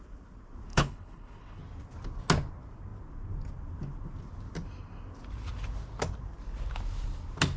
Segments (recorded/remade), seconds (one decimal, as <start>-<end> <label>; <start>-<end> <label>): 0.0-0.7 recorded; 0.7-1.6 remade; 1.6-7.6 recorded